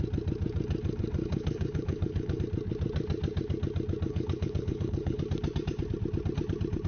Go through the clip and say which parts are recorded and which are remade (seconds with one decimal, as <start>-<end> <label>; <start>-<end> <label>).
0.0-1.2 recorded; 1.2-2.4 remade; 2.4-4.1 recorded; 4.1-5.2 remade; 5.2-6.9 recorded